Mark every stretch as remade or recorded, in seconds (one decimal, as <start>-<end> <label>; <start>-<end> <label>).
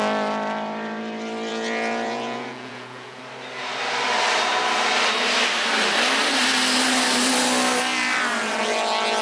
0.0-1.5 recorded; 1.5-3.2 remade; 3.2-9.2 recorded